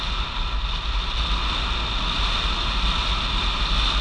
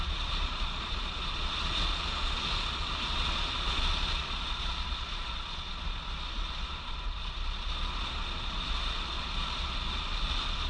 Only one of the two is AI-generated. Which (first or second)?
second